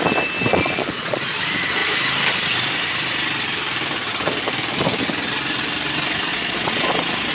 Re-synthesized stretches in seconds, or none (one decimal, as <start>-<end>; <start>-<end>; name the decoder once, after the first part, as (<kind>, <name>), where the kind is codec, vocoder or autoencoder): 0.5-1.3 (vocoder, Vocos); 6.3-7.3